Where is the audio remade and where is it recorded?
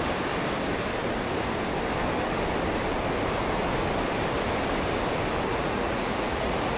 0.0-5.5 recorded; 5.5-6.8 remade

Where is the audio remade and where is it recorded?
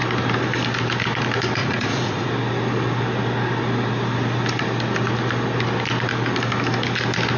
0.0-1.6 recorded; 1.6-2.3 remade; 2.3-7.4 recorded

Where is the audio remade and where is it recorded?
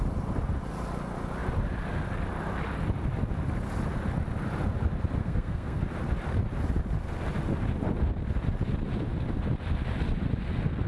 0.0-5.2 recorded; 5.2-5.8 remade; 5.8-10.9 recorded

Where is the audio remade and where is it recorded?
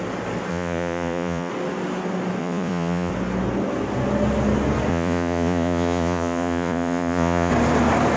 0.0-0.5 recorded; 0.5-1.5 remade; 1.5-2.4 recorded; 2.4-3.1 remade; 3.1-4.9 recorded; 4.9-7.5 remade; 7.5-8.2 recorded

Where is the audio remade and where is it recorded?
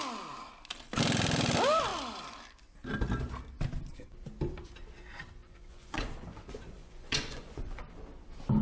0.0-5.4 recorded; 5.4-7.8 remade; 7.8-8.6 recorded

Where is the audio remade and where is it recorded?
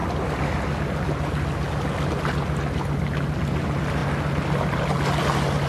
0.0-5.7 recorded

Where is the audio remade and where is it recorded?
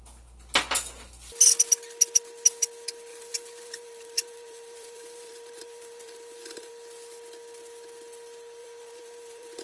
0.0-3.1 recorded; 3.1-6.7 remade; 6.7-8.6 recorded; 8.6-9.6 remade